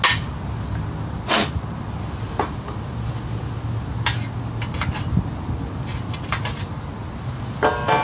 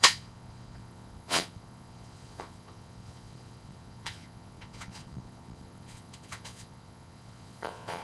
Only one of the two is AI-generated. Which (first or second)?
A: second